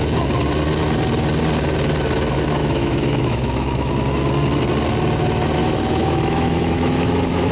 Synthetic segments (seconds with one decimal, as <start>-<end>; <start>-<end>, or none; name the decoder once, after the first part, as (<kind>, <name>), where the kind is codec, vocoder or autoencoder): 2.6-3.9 (autoencoder, DAC-VAE); 5.6-7.5